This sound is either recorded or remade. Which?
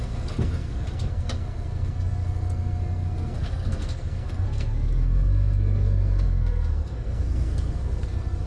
remade